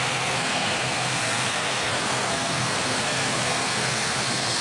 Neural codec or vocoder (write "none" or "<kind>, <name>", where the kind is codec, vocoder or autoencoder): codec, SNAC